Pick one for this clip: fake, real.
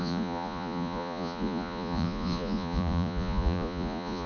fake